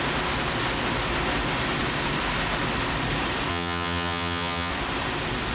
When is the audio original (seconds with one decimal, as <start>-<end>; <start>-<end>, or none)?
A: 0.0-3.5; 4.7-5.5